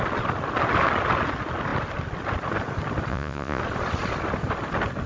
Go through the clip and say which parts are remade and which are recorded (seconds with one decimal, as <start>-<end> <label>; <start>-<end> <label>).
0.0-3.1 recorded; 3.1-3.6 remade; 3.6-5.1 recorded